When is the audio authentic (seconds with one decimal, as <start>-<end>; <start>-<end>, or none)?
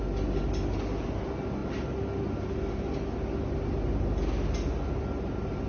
0.0-5.7